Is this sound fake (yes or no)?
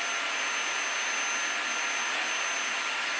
no